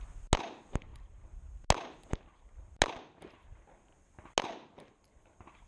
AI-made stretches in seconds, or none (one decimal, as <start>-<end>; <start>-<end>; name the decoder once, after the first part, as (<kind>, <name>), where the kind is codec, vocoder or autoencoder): none